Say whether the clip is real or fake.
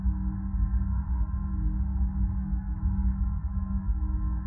fake